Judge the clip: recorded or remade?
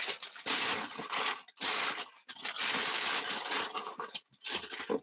recorded